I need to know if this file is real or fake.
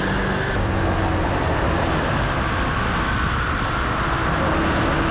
real